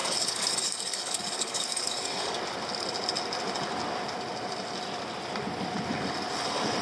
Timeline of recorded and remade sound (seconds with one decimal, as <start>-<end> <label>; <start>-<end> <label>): 0.0-2.4 remade; 2.4-6.8 recorded